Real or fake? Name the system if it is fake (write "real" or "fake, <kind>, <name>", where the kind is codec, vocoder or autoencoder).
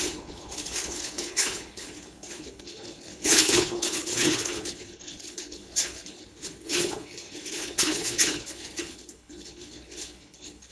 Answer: fake, codec, HILCodec